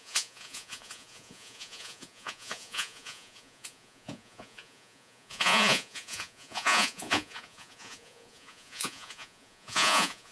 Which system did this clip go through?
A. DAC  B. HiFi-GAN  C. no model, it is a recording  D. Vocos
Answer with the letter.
D